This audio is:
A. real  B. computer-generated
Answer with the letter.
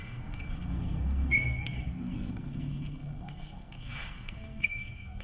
B